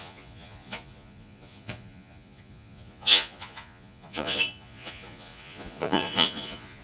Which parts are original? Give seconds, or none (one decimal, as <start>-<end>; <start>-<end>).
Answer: none

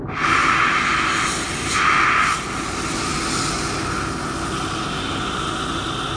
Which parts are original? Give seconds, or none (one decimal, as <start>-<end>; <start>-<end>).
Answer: 0.0-6.2

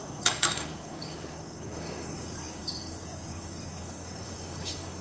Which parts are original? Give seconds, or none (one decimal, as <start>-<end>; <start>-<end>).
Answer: none

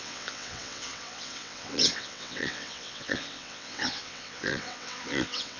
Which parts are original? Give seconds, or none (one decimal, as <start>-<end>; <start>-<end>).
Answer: none